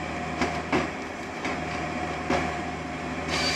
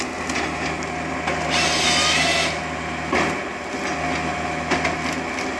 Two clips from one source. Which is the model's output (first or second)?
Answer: first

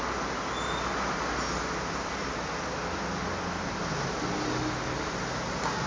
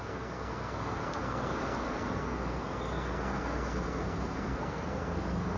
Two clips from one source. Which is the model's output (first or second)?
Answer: second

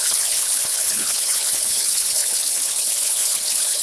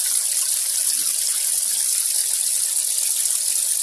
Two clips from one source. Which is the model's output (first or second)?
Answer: first